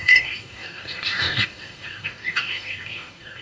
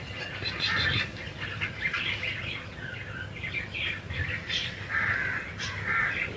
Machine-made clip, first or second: first